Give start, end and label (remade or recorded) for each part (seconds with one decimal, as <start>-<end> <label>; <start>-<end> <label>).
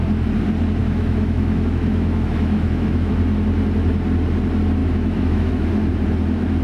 0.0-0.8 recorded; 0.8-3.1 remade; 3.1-4.8 recorded; 4.8-5.7 remade; 5.7-6.6 recorded